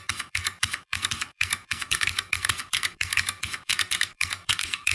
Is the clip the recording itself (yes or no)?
no